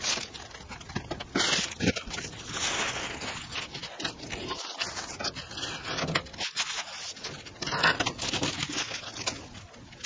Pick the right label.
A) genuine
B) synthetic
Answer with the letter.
A